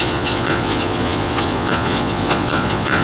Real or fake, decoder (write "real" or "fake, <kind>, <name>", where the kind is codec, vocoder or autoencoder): fake, vocoder, Vocos